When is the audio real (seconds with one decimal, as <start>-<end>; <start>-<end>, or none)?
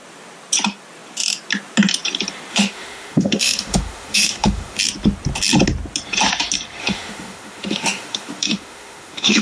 0.0-2.5; 4.8-6.8